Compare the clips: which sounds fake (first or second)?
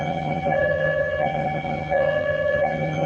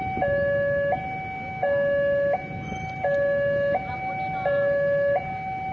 first